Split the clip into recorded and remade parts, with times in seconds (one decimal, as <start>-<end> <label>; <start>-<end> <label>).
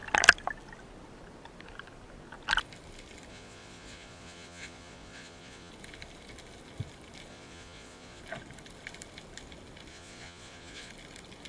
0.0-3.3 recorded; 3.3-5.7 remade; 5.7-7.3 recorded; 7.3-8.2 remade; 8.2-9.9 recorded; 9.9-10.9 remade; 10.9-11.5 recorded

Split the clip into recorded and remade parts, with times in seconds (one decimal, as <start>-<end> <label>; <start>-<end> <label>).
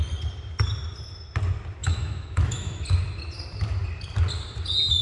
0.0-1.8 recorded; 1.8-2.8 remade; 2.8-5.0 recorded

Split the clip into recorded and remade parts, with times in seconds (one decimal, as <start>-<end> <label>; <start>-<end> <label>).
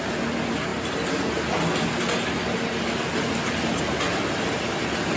0.0-5.2 recorded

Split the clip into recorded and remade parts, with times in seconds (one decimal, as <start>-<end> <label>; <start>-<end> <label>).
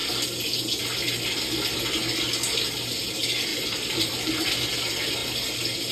0.0-3.5 recorded; 3.5-4.7 remade; 4.7-5.9 recorded